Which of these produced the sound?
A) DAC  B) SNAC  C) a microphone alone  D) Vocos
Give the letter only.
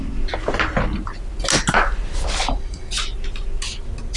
C